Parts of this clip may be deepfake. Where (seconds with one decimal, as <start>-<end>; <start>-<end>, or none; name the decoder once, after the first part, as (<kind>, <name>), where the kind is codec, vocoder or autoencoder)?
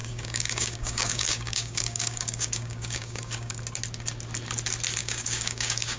0.0-3.6 (codec, DAC); 5.0-6.0